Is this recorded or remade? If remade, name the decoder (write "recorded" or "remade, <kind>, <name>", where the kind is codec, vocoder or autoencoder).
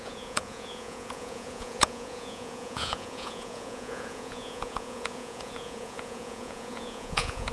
remade, vocoder, Vocos